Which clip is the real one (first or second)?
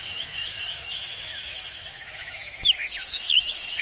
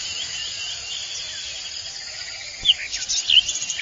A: second